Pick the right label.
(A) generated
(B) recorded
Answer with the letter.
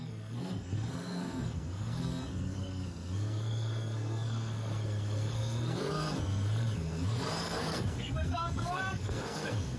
A